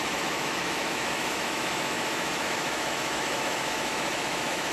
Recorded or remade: remade